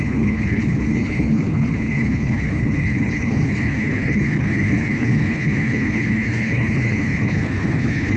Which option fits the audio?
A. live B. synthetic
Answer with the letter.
B